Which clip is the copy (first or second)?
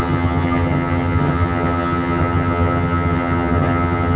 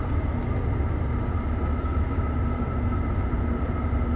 first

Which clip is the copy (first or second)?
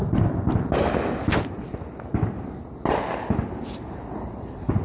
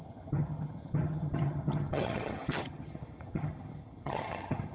second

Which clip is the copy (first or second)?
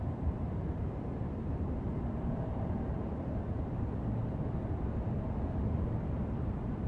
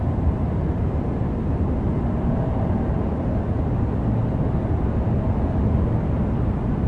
first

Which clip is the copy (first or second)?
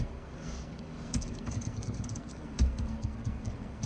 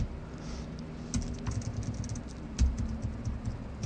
first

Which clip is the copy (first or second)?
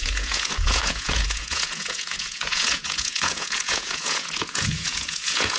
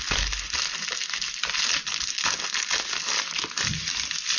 first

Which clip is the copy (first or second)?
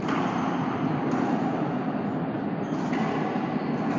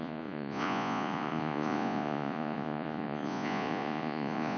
second